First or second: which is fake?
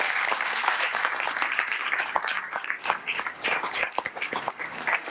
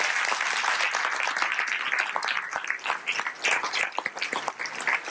first